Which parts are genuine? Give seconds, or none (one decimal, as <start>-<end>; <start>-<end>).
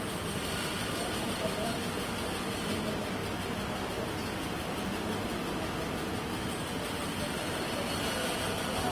0.0-8.9